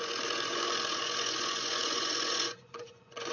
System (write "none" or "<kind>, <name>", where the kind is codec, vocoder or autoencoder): vocoder, Vocos